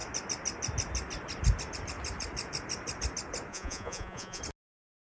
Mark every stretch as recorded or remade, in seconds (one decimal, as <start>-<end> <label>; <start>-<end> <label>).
0.0-3.5 recorded; 3.5-4.4 remade; 4.4-5.0 recorded